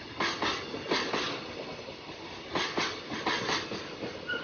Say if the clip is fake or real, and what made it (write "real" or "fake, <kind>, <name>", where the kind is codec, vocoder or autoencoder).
real